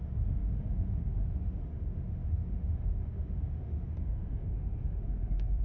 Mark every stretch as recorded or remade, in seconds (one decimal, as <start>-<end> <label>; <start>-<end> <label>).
0.0-5.6 remade